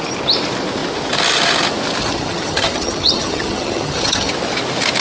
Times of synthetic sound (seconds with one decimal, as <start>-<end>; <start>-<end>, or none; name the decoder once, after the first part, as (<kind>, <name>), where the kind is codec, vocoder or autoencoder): 2.0-4.3 (vocoder, HiFi-GAN)